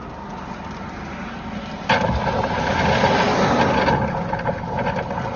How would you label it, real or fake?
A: real